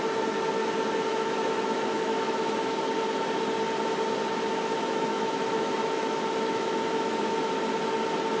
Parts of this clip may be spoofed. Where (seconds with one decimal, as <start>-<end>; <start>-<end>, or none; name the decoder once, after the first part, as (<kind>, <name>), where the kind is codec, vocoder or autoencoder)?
1.1-2.8 (autoencoder, DAC-VAE); 4.5-7.3